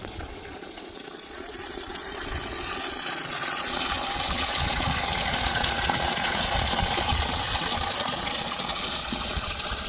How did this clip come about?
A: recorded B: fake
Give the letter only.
B